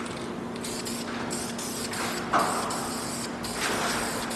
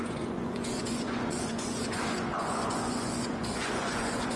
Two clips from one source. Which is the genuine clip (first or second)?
first